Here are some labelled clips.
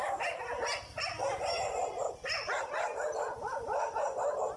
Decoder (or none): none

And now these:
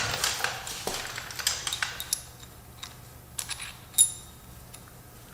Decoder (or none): none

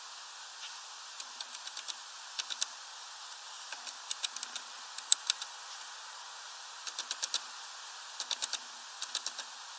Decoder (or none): none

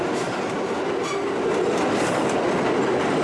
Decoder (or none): none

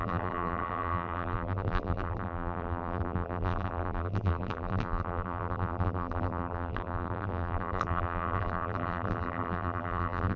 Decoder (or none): vocoder, BigVGAN v2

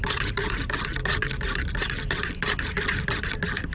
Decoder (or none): none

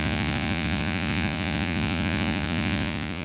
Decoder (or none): vocoder, Vocos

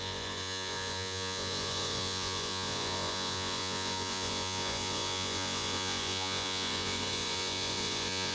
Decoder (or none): vocoder, Vocos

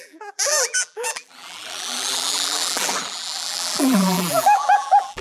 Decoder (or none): vocoder, BigVGAN v2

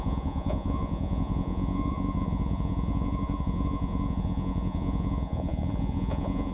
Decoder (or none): vocoder, Vocos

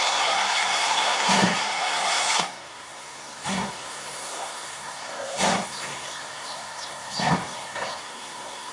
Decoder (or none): codec, SNAC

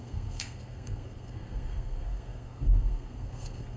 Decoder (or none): codec, SNAC